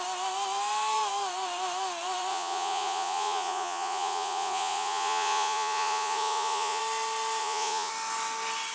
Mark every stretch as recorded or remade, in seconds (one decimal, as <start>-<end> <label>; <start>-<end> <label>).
0.0-2.3 recorded; 2.3-6.8 remade; 6.8-7.4 recorded; 7.4-7.9 remade; 7.9-8.7 recorded